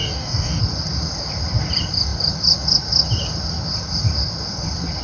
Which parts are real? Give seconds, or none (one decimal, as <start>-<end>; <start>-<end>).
0.6-5.0